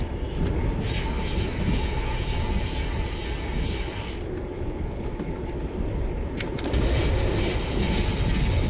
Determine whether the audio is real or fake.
real